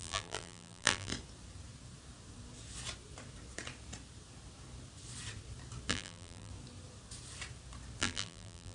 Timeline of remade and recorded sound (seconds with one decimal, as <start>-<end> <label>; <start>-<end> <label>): 0.0-1.1 remade; 1.1-5.9 recorded; 5.9-6.5 remade; 6.5-8.0 recorded; 8.0-8.7 remade